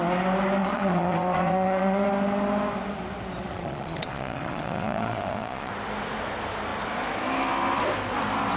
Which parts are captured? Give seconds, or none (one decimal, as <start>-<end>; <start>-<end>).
0.0-0.6; 2.1-3.5; 5.7-8.6